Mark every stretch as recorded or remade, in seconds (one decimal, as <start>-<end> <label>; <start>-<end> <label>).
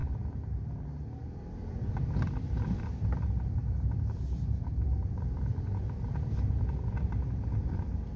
0.0-1.6 recorded; 1.6-6.4 remade; 6.4-8.2 recorded